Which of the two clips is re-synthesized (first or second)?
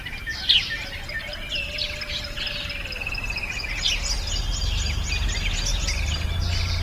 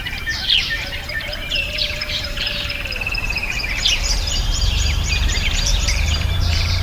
second